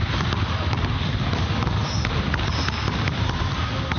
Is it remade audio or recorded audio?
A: recorded